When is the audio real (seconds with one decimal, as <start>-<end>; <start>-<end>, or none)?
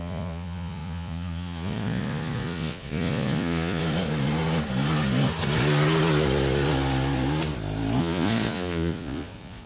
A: 3.8-8.0